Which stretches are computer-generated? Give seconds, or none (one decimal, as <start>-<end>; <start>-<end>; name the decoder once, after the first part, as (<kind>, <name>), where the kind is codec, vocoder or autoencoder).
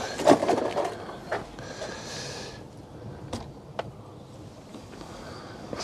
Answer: 4.7-5.8 (codec, DAC)